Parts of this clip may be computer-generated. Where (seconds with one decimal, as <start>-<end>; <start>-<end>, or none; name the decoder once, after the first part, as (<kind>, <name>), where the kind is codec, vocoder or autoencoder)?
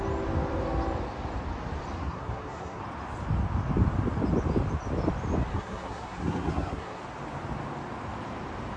2.0-2.8 (codec, SNAC); 5.5-7.0